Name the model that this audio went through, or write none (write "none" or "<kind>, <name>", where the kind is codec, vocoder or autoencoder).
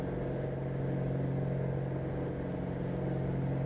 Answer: none